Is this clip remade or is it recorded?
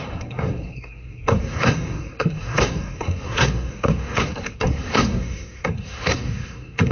remade